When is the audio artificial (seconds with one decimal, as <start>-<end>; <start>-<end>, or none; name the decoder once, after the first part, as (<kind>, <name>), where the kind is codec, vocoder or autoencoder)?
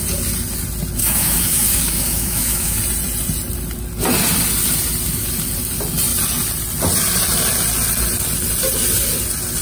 1.0-2.8 (autoencoder, DAC-VAE)